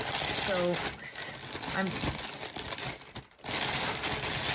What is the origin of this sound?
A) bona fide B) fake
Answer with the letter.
A